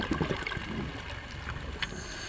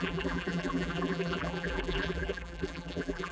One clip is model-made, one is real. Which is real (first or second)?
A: first